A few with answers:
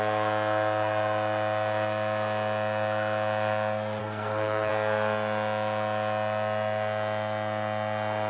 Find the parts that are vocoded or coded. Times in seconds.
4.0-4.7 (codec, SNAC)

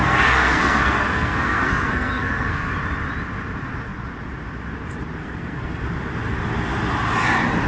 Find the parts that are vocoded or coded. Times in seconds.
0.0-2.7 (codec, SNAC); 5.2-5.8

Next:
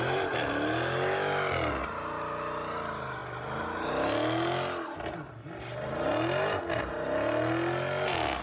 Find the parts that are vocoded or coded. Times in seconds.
none

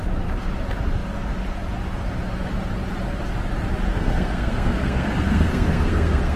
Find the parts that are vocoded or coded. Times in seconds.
3.9-6.4 (codec, SNAC)

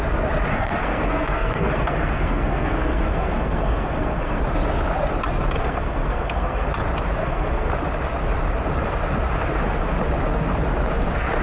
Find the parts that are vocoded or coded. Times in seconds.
0.5-4.4 (codec, SNAC); 5.6-6.7; 7.2-7.7

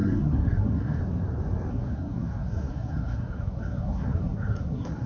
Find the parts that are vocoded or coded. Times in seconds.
0.0-1.0 (codec, SNAC); 1.7-5.1